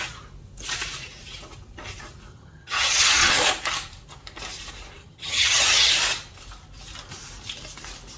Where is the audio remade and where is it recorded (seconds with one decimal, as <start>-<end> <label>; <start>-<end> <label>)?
0.0-2.3 recorded; 2.3-3.3 remade; 3.3-5.0 recorded; 5.0-5.9 remade; 5.9-8.2 recorded

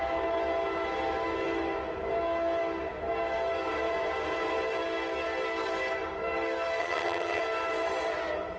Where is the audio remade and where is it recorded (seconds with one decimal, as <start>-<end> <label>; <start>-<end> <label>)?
0.0-6.8 recorded; 6.8-7.4 remade; 7.4-8.6 recorded